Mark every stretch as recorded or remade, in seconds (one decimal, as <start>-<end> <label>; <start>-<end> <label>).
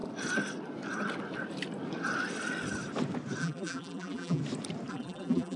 0.0-3.4 recorded; 3.4-4.4 remade; 4.4-4.9 recorded; 4.9-5.6 remade